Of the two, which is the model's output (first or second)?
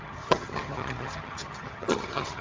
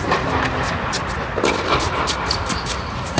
first